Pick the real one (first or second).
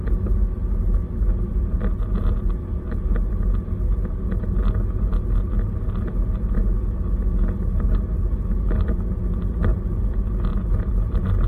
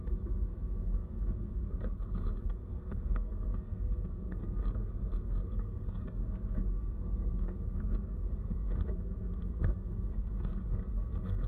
first